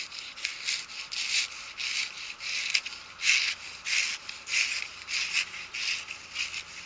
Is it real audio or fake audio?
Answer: real